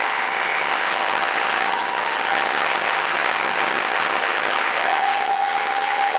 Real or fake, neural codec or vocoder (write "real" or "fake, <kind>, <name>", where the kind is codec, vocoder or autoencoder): fake, vocoder, HiFi-GAN